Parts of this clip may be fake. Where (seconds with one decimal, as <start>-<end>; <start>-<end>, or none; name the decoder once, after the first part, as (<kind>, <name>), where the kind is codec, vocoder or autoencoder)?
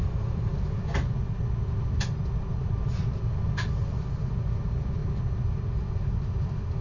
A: 0.0-0.5 (vocoder, BigVGAN v2); 2.5-5.0